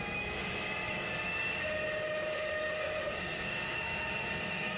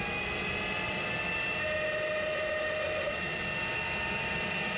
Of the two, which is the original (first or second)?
second